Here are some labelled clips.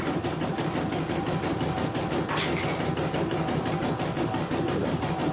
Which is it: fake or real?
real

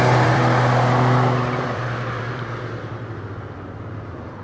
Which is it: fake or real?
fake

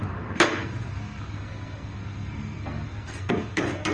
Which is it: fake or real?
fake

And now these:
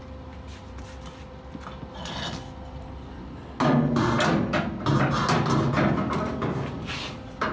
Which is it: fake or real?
real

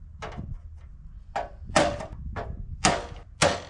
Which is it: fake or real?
real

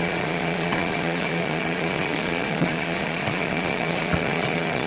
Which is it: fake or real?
fake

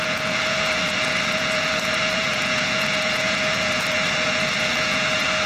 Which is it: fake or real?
fake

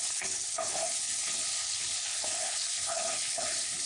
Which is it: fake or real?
fake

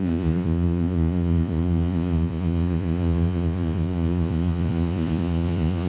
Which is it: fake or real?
fake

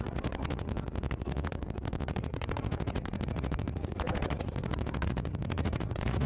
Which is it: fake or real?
fake